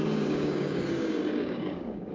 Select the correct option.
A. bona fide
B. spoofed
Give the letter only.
B